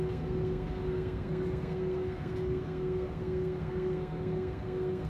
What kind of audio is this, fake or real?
fake